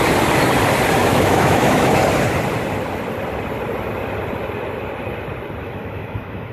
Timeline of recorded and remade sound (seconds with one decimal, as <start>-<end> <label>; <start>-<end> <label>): 0.0-1.0 recorded; 1.0-2.0 remade; 2.0-5.6 recorded; 5.6-6.5 remade